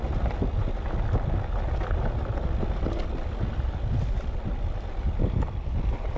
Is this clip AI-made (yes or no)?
no